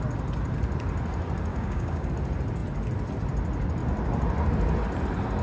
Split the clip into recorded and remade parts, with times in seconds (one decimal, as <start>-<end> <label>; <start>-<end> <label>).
0.0-1.5 recorded; 1.5-2.1 remade; 2.1-5.4 recorded